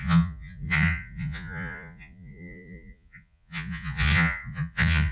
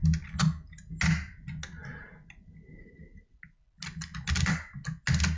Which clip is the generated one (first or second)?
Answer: first